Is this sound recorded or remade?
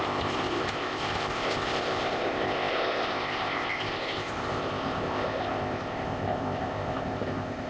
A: remade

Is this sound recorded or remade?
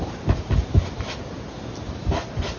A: recorded